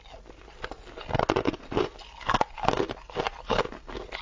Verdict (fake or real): real